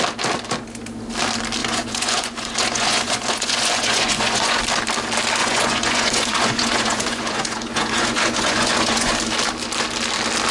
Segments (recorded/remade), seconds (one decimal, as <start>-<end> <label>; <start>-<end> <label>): 0.0-1.6 recorded; 1.6-4.6 remade; 4.6-5.4 recorded; 5.4-9.1 remade; 9.1-10.5 recorded